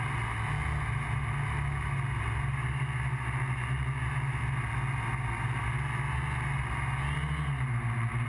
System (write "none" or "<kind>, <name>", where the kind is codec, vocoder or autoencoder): none